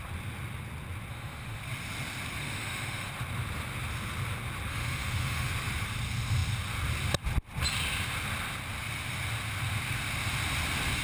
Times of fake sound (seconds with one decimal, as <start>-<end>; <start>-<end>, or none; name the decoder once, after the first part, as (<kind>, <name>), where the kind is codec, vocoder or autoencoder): 1.1-1.6 (autoencoder, DAC-VAE); 2.4-3.1; 4.7-5.5